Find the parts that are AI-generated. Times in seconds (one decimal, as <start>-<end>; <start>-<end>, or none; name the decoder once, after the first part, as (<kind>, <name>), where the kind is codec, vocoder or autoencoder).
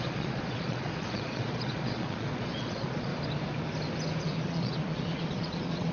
0.0-3.1 (vocoder, Vocos); 4.2-5.9